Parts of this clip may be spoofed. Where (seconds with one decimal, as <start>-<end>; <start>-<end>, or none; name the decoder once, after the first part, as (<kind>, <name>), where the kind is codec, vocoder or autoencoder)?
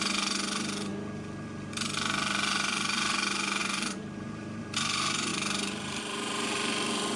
3.6-4.6 (vocoder, BigVGAN v2); 5.3-7.2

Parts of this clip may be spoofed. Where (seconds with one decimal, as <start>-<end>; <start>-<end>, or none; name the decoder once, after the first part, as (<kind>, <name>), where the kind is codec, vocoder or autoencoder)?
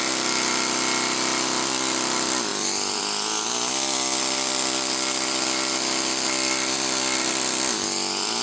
none